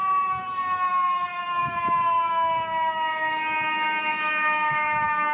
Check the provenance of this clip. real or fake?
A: fake